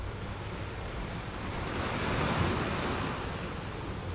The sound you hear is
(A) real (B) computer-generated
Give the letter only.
A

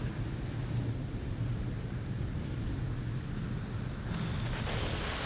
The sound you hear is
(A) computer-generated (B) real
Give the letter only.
B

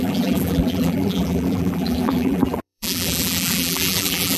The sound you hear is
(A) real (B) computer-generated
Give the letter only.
B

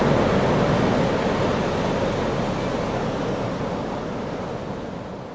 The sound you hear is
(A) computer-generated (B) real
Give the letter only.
B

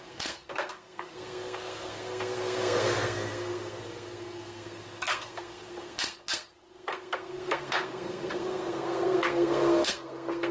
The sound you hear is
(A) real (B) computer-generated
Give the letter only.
B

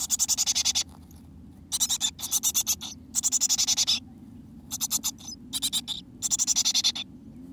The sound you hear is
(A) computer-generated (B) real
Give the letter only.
B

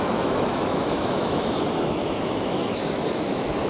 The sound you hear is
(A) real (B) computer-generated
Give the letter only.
B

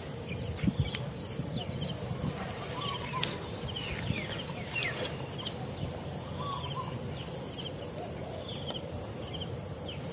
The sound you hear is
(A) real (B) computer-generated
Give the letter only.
A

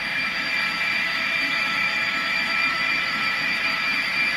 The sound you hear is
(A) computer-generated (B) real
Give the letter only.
A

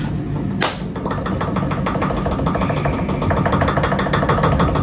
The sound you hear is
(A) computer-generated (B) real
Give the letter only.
B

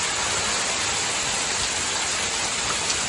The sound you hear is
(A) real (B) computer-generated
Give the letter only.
A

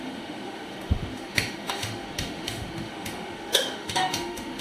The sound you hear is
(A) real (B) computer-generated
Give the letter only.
B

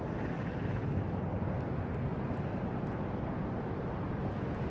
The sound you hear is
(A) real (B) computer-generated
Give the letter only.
A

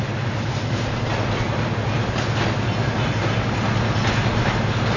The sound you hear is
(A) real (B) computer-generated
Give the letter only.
A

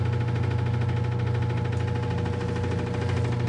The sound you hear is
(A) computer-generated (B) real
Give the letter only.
B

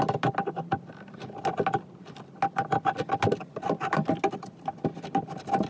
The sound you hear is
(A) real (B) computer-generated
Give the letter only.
A